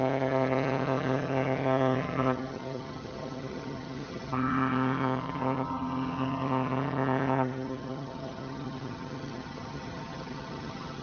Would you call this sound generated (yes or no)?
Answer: yes